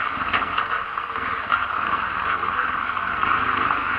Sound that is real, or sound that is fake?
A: fake